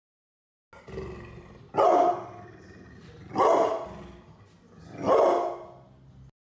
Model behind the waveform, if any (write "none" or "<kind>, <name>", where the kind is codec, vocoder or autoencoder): none